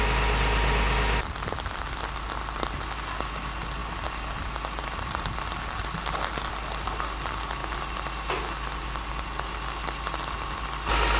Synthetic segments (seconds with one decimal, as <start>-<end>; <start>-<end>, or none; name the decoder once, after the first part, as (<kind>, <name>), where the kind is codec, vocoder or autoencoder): none